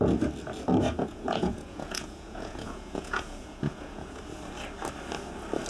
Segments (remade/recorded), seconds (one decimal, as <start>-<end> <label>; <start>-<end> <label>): 0.0-0.8 recorded; 0.8-4.2 remade; 4.2-5.7 recorded